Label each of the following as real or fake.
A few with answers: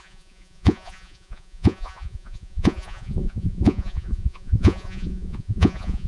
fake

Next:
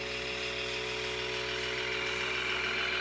real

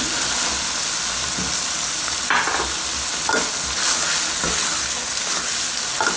real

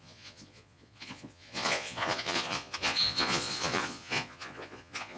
fake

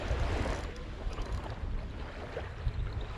real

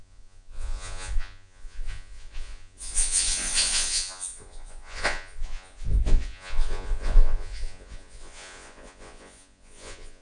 fake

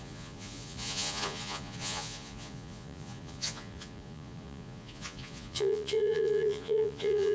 fake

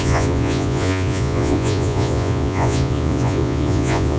fake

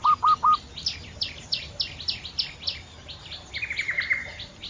real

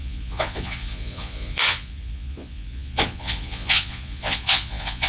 fake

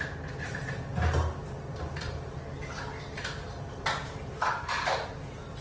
real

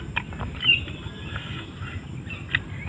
real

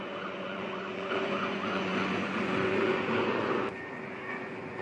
fake